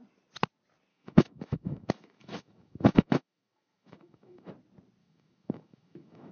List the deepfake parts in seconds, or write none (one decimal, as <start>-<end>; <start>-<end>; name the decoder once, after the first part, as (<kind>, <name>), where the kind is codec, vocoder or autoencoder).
0.9-4.5 (autoencoder, DAC-VAE); 5.0-6.3

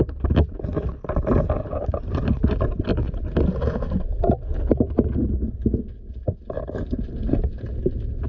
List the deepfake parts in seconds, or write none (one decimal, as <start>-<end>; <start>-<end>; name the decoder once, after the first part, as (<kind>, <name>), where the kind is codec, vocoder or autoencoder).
none

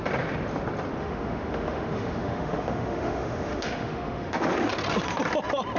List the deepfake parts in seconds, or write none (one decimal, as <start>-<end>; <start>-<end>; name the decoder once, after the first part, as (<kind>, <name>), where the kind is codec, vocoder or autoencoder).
1.0-4.5 (autoencoder, DAC-VAE)

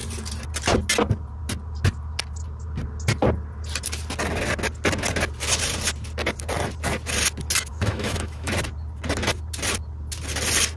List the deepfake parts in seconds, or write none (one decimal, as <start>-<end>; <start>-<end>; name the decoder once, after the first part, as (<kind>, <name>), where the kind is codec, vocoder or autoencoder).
7.7-8.5 (autoencoder, DAC-VAE)

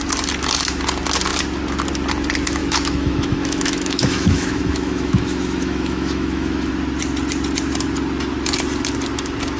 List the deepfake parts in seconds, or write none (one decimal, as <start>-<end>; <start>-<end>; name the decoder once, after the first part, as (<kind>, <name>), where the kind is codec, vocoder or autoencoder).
2.6-6.7 (autoencoder, DAC-VAE)

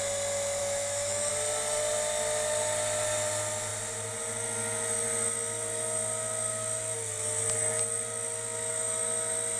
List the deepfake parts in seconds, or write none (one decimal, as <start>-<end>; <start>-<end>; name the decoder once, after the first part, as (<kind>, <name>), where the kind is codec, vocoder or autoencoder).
0.6-1.3 (autoencoder, DAC-VAE)

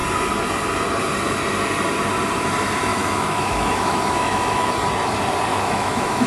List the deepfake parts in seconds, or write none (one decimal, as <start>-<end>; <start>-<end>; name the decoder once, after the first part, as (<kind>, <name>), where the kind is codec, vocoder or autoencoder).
2.9-4.7 (autoencoder, DAC-VAE); 5.5-6.3

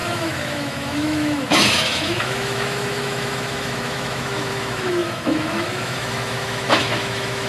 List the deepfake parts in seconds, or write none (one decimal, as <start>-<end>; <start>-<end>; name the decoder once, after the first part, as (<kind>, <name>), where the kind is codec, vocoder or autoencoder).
0.0-7.5 (autoencoder, DAC-VAE)